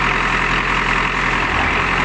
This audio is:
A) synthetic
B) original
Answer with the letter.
B